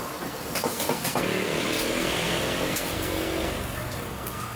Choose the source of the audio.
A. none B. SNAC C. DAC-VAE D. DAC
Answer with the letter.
B